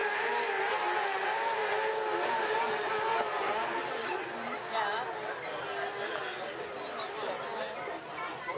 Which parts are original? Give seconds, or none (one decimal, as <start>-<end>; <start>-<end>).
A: 0.0-8.6